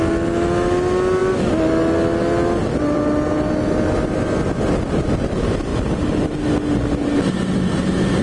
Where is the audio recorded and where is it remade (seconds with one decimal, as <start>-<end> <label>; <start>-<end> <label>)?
0.0-8.2 recorded